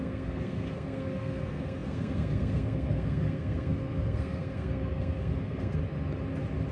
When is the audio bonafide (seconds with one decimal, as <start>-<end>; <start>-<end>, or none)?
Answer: 5.8-6.7